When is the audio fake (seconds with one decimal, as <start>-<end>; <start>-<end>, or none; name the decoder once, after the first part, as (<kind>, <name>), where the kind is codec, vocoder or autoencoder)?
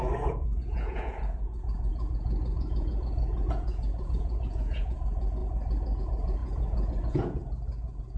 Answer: 0.0-5.4 (vocoder, Vocos); 6.0-8.2